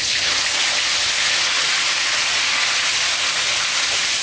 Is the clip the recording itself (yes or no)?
yes